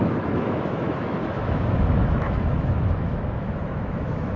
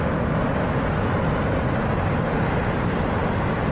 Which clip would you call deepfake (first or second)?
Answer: first